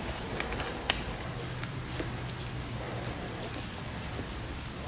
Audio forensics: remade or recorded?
recorded